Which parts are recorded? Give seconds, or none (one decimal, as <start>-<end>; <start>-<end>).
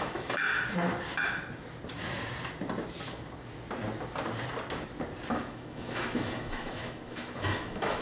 0.5-5.3